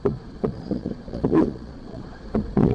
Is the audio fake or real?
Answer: fake